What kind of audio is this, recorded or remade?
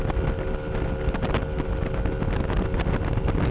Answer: recorded